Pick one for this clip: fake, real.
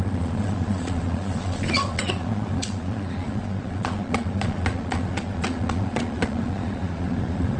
fake